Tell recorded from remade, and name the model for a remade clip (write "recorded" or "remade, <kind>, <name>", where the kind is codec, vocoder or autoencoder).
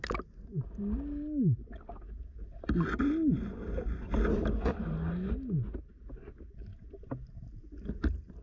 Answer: recorded